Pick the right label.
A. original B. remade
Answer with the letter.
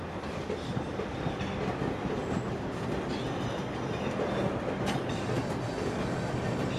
A